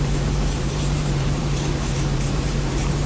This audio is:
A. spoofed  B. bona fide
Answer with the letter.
A